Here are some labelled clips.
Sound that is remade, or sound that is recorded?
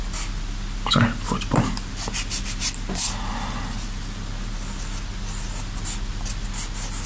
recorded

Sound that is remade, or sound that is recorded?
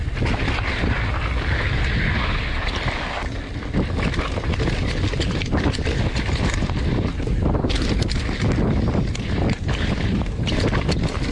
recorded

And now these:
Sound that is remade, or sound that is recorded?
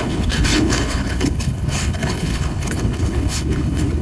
remade